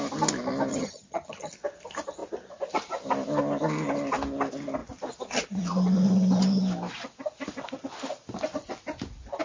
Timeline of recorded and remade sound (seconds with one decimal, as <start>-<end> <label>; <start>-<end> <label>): 0.0-0.7 recorded; 0.7-1.5 remade; 1.5-9.4 recorded

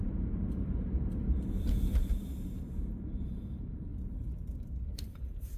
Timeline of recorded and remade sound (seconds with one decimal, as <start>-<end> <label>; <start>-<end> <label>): 0.0-5.6 remade

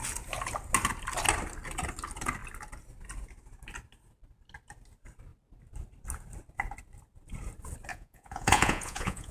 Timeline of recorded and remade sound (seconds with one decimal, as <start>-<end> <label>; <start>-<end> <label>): 0.0-7.9 recorded; 7.9-9.3 remade

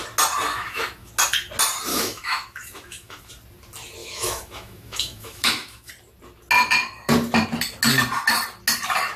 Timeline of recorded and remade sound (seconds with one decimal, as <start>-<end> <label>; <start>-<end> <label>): 0.0-0.5 recorded; 0.5-1.1 remade; 1.1-1.9 recorded; 1.9-3.3 remade; 3.3-4.0 recorded; 4.0-5.9 remade; 5.9-9.2 recorded

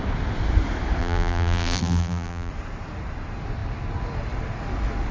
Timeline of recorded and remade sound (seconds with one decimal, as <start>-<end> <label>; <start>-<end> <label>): 0.0-1.0 recorded; 1.0-2.5 remade; 2.5-5.1 recorded